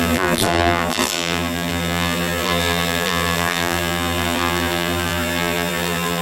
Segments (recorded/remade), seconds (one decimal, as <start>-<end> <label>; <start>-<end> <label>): 0.0-6.2 remade